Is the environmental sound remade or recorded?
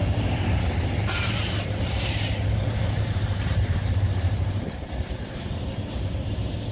remade